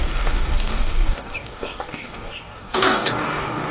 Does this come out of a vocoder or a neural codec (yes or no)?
yes